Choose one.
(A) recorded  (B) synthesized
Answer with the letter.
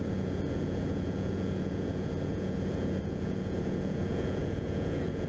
B